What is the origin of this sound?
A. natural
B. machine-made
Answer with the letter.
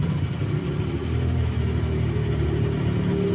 A